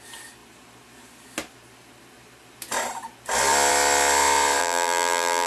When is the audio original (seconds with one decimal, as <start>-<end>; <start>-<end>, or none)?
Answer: 0.0-4.6